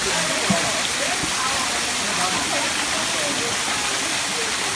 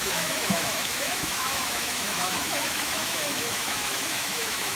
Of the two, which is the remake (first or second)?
second